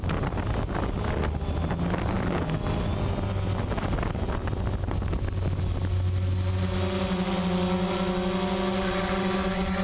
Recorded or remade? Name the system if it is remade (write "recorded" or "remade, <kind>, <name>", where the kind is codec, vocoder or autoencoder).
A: recorded